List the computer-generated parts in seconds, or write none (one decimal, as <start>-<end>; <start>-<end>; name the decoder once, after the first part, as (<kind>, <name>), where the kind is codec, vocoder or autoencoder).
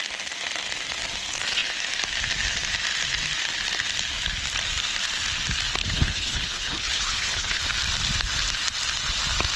5.8-7.6 (codec, HILCodec)